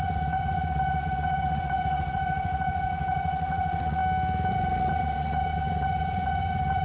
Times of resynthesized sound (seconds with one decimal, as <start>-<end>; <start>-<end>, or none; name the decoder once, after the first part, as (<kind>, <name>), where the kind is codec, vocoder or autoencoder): 0.0-4.0 (vocoder, WaveNeXt); 4.5-6.8